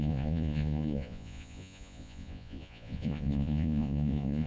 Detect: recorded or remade remade